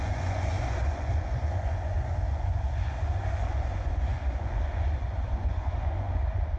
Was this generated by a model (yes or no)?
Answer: yes